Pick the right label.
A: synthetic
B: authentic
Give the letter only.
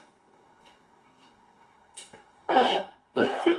A